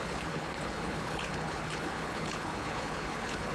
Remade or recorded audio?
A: remade